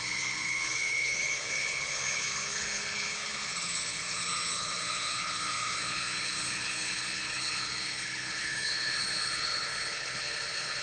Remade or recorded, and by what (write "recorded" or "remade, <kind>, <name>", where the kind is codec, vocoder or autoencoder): remade, codec, HILCodec